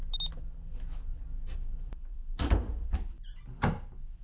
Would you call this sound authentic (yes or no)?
yes